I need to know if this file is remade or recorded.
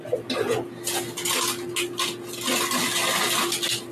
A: recorded